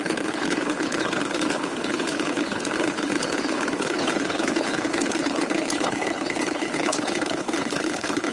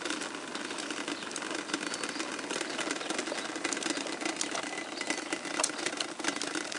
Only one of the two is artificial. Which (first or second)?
first